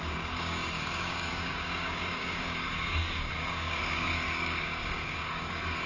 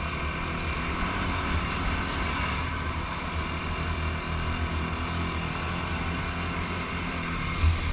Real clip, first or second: second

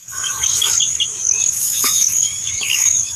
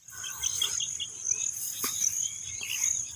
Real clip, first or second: second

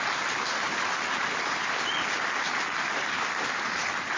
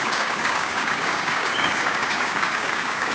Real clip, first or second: first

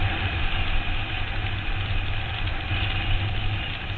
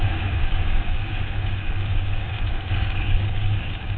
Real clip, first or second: first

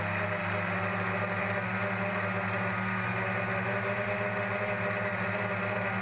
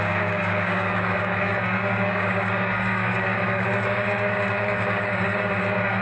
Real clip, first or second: first